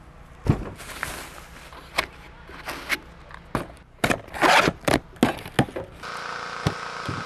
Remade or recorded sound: recorded